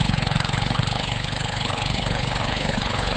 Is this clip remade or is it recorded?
remade